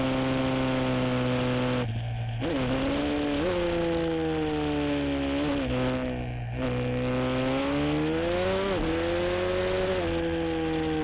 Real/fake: real